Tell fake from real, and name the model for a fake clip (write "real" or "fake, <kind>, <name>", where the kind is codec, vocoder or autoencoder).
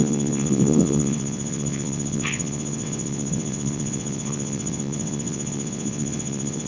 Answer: fake, vocoder, WaveNeXt